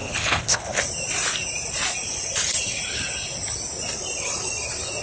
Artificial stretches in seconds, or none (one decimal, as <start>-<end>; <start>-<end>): 0.0-0.8